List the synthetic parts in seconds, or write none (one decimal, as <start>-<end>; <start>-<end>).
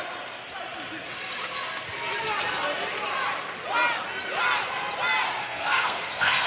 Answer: 5.4-6.5